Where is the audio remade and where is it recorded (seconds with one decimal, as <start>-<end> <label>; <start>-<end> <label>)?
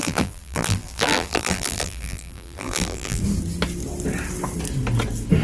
0.0-3.2 remade; 3.2-5.4 recorded